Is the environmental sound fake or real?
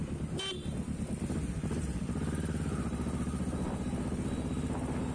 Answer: real